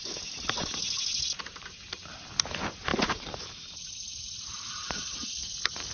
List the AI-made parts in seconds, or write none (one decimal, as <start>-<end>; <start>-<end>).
2.9-5.5